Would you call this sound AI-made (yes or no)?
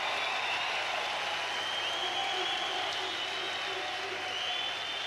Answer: no